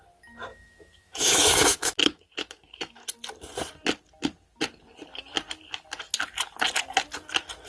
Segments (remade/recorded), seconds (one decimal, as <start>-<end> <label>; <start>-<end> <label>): 0.0-0.5 recorded; 0.5-3.0 remade; 3.0-7.7 recorded